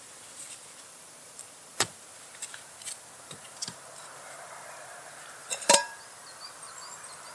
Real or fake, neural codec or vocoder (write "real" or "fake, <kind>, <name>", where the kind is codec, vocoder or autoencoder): fake, vocoder, BigVGAN v2